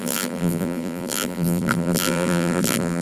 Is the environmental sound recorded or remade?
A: remade